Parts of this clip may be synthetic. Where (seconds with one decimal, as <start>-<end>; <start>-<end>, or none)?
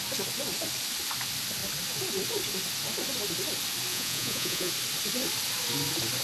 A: 3.9-4.7